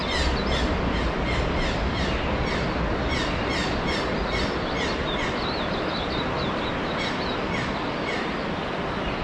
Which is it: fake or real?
real